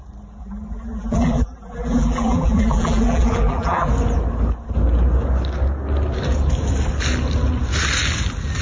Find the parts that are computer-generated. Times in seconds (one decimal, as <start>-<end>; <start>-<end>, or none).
0.4-3.9

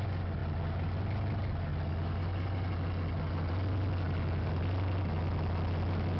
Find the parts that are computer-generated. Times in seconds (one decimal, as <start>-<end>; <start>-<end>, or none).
none

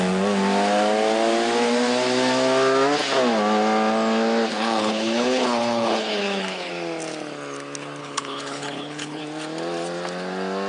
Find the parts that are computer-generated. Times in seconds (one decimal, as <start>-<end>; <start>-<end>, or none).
4.5-6.7; 8.0-9.2

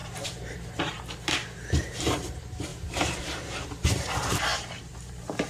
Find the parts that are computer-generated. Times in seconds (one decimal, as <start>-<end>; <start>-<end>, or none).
0.0-5.5